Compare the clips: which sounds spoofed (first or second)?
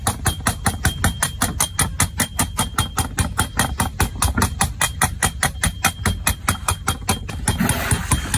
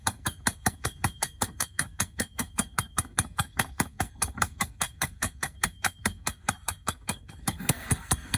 second